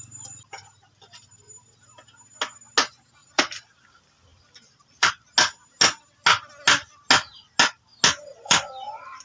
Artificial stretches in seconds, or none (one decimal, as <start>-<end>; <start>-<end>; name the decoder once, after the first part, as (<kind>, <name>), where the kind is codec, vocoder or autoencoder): 3.2-3.8 (vocoder, BigVGAN v2); 4.3-5.1; 8.3-9.2

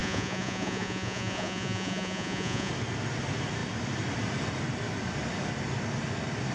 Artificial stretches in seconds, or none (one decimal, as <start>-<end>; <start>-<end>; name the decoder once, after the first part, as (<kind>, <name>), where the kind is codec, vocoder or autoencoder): 0.0-2.7 (vocoder, Vocos)

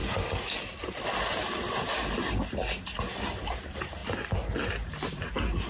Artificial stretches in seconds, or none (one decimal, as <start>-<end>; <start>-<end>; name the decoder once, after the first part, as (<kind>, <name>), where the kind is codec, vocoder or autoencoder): 3.4-4.0 (vocoder, BigVGAN v2); 5.1-5.7

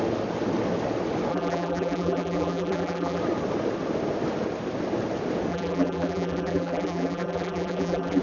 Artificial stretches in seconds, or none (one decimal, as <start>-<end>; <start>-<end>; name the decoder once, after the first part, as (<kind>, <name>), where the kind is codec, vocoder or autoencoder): 1.3-3.2 (vocoder, BigVGAN v2); 5.5-8.2

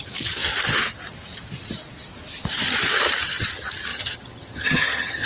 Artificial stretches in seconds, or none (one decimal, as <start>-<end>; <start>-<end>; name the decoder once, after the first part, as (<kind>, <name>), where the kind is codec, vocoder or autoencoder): 3.9-5.3 (vocoder, HiFi-GAN)

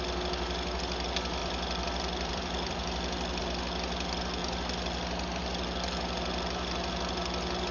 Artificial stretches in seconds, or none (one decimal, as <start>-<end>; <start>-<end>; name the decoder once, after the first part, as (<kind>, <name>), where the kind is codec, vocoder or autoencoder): 1.4-3.4 (vocoder, BigVGAN v2)

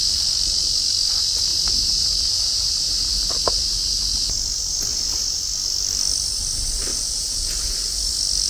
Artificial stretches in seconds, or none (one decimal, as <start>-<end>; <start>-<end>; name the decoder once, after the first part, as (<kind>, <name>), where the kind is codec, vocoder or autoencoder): 1.5-2.7 (vocoder, Vocos); 4.9-5.4; 6.9-8.1

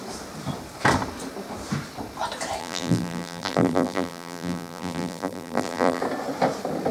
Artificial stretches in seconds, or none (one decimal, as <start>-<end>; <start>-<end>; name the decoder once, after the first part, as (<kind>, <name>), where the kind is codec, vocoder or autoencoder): 2.6-6.0 (vocoder, BigVGAN v2)